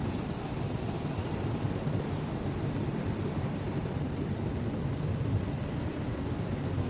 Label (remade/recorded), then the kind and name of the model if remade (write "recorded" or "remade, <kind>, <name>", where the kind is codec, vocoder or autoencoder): remade, vocoder, BigVGAN v2